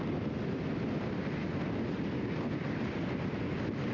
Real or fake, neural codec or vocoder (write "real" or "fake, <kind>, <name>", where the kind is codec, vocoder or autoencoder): real